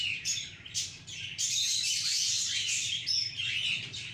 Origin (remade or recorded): remade